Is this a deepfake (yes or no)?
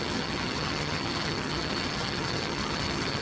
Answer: yes